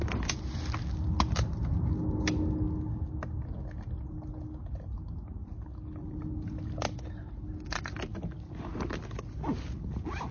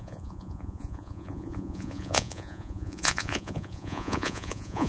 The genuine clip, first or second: first